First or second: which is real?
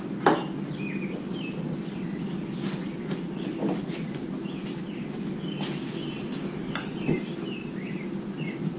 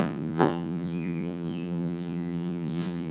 first